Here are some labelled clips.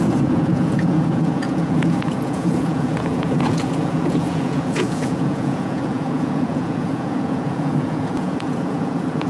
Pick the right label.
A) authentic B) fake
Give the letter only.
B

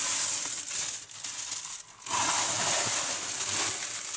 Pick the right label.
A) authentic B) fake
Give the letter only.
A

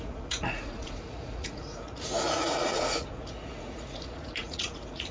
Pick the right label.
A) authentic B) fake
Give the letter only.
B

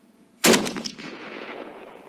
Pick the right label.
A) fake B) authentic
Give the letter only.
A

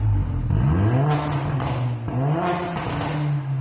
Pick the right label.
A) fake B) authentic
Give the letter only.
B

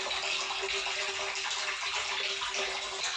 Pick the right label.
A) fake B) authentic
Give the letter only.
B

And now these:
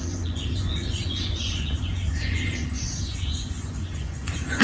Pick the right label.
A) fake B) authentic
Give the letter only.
A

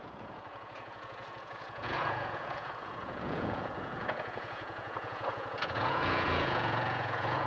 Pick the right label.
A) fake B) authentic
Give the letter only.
A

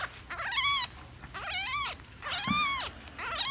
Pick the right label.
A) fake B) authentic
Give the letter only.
B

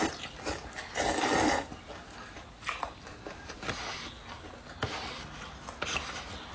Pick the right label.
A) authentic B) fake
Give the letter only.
A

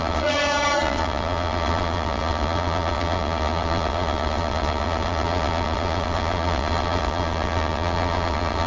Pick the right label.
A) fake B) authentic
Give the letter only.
A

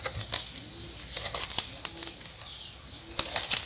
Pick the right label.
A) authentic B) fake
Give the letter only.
A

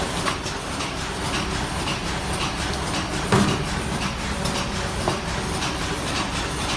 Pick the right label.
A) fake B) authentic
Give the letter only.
B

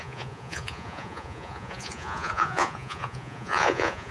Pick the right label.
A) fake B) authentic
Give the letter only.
A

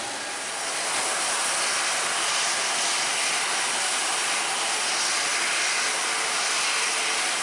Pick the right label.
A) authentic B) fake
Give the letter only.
A